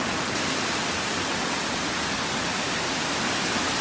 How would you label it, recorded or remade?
recorded